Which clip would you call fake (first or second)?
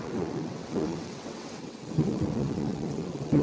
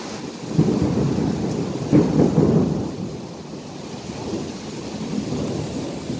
first